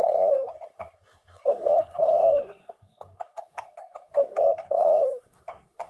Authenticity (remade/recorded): remade